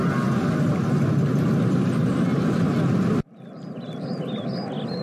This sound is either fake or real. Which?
real